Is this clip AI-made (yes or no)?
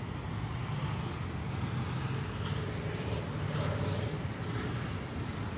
no